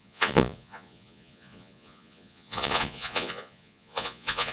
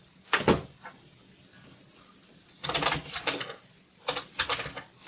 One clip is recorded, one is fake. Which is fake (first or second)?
first